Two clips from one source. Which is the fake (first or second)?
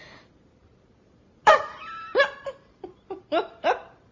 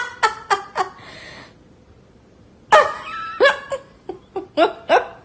first